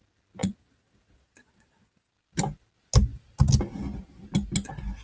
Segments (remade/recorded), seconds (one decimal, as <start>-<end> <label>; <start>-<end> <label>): 0.0-0.4 recorded; 0.4-2.1 remade; 2.1-5.0 recorded